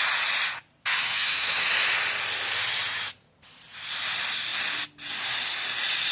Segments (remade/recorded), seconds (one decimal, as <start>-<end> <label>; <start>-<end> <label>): 0.0-0.9 recorded; 0.9-1.7 remade; 1.7-6.1 recorded